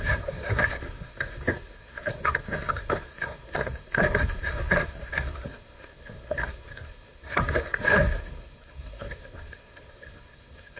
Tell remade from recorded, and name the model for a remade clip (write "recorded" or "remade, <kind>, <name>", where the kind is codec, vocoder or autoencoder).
remade, codec, SNAC